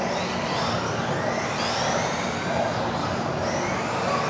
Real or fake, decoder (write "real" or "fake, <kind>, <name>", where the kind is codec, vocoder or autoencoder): real